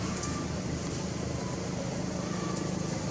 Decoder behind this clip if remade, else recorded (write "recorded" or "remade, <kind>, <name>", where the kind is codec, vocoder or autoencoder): recorded